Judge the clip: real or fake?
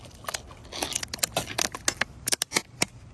real